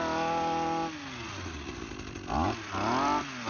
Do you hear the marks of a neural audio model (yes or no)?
no